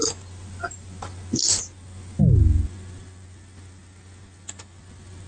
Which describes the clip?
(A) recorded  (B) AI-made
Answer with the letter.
A